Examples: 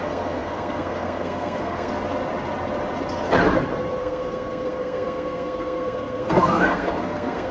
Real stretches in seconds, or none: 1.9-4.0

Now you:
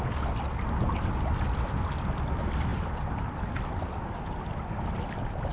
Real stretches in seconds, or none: 0.0-5.5

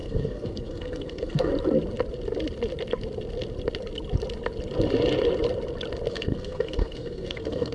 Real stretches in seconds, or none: 1.5-6.1

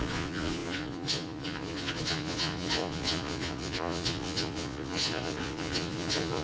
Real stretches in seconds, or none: none